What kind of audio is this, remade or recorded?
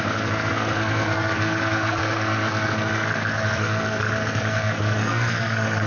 remade